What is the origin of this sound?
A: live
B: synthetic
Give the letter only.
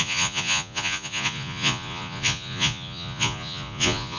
B